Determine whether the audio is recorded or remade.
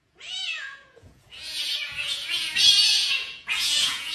remade